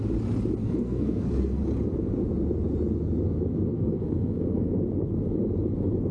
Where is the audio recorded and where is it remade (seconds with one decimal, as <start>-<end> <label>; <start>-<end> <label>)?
0.0-0.6 recorded; 0.6-1.6 remade; 1.6-3.7 recorded; 3.7-4.7 remade; 4.7-6.1 recorded